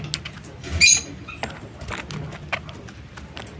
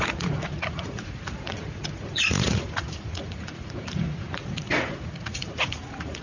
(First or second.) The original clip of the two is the first